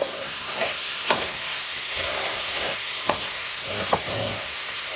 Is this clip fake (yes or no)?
yes